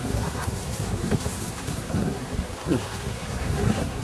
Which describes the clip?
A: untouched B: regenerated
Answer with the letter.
B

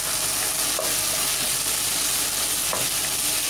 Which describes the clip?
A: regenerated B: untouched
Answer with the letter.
B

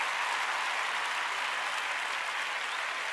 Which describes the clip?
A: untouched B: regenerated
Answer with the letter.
A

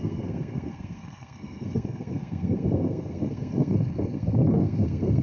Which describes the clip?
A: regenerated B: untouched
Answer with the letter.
A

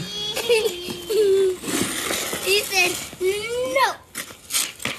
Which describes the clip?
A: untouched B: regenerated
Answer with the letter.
A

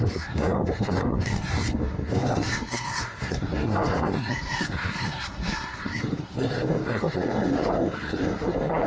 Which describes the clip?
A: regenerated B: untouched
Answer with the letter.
A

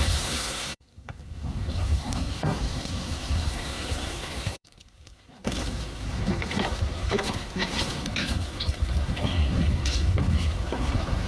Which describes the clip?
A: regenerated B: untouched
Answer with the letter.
A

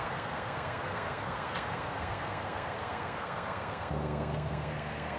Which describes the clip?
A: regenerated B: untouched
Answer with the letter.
A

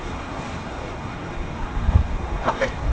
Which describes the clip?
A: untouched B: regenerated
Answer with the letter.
B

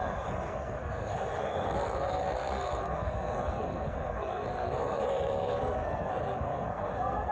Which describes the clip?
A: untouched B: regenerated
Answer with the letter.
B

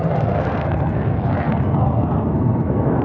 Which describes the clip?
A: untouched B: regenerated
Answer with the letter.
B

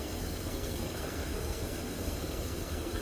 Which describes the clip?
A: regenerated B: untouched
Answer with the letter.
A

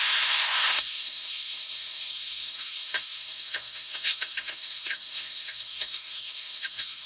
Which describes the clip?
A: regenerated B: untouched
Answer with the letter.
A